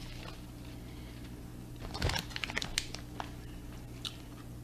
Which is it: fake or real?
real